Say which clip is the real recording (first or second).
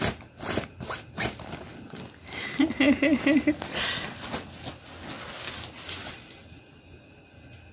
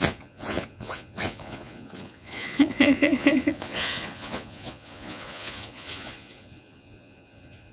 first